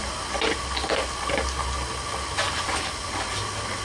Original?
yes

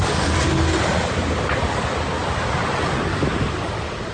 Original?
yes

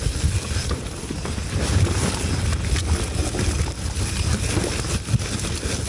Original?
yes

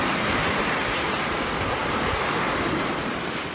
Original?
yes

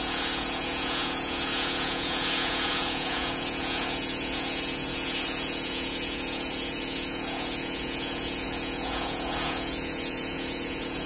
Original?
no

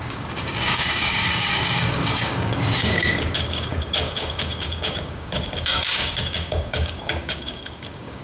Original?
no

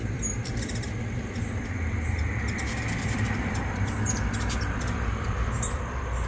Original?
no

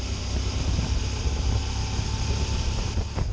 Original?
yes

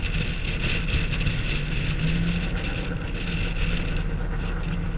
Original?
yes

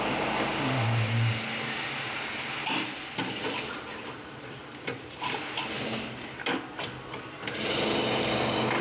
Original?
yes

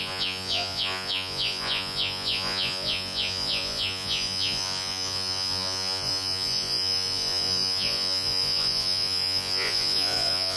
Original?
no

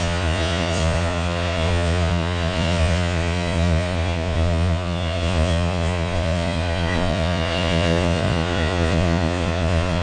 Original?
no